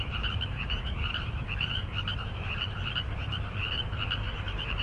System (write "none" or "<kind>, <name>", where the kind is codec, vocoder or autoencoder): vocoder, BigVGAN v2